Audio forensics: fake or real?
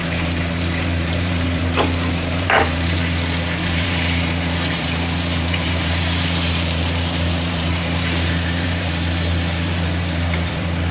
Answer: fake